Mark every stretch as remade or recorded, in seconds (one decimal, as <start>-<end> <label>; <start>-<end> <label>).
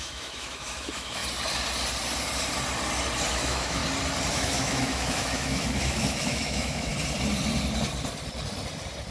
0.0-1.2 remade; 1.2-3.3 recorded; 3.3-3.8 remade; 3.8-4.3 recorded; 4.3-6.9 remade; 6.9-9.1 recorded